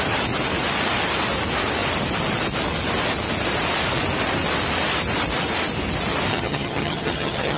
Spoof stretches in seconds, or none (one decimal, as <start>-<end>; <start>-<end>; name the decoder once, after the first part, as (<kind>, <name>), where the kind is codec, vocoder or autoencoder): 6.3-7.6 (vocoder, HiFi-GAN)